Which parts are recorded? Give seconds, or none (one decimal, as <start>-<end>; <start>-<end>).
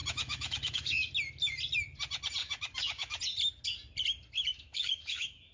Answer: 1.1-2.4; 3.2-4.5